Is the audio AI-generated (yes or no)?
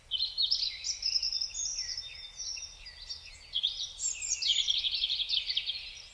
no